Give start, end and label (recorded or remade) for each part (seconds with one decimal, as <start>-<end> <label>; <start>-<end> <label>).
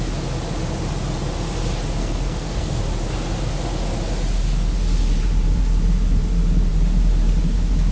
0.0-2.0 recorded; 2.0-2.8 remade; 2.8-7.9 recorded